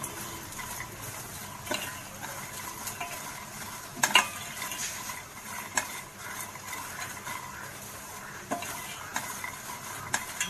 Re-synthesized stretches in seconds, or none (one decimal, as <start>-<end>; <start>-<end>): 4.8-6.0